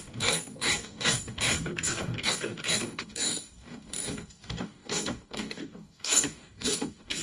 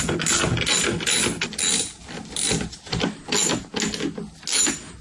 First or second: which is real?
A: second